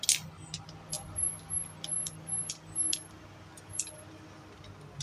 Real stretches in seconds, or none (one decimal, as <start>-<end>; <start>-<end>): 0.0-1.9